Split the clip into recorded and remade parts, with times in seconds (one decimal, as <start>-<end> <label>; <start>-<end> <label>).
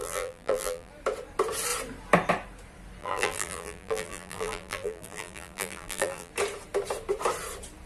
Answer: 0.0-0.9 remade; 0.9-3.0 recorded; 3.0-6.3 remade; 6.3-7.9 recorded